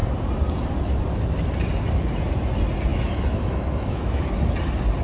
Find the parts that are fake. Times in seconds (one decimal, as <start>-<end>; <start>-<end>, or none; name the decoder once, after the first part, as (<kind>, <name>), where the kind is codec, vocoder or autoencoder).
2.9-4.2 (autoencoder, DAC-VAE)